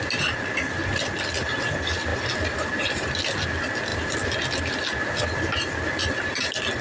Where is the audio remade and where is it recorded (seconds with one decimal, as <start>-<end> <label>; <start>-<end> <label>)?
0.0-2.1 recorded; 2.1-3.0 remade; 3.0-6.8 recorded